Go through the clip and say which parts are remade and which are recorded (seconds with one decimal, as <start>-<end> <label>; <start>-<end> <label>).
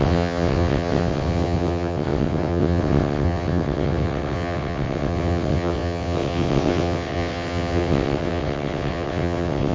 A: 0.0-9.7 remade